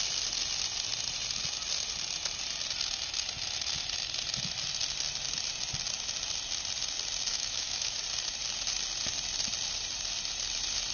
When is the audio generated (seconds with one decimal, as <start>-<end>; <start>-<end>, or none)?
7.3-8.0